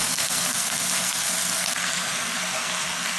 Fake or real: fake